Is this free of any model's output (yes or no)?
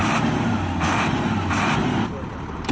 yes